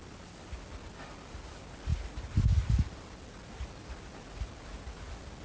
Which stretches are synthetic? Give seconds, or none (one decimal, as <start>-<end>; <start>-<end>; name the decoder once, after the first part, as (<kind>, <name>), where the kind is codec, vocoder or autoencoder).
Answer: none